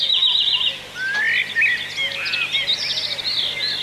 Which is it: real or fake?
real